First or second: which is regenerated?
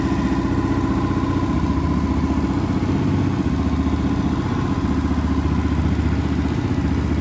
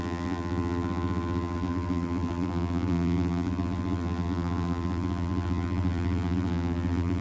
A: second